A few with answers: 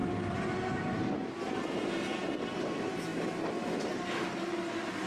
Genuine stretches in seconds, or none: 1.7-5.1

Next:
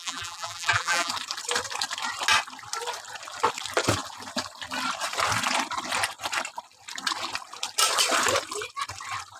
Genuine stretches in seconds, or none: 1.1-9.4

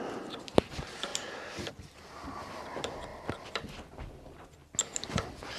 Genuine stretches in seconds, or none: 0.0-1.1; 1.7-5.6

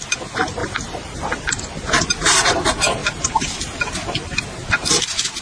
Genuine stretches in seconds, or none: 0.0-0.6; 1.6-3.0; 3.9-5.4

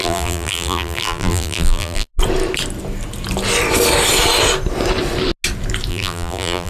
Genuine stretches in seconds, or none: 2.1-5.9

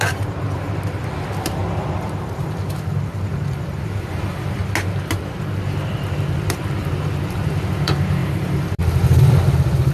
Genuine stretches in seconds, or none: 1.6-2.2; 4.6-5.1

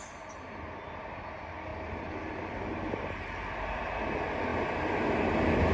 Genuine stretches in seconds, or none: 0.0-1.7; 4.0-5.7